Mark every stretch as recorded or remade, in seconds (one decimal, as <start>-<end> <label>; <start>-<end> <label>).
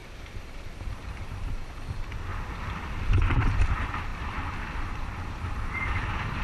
0.0-2.3 remade; 2.3-3.3 recorded; 3.3-6.4 remade